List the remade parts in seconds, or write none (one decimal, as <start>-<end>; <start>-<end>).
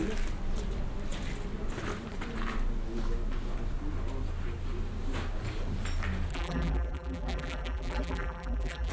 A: 6.3-8.9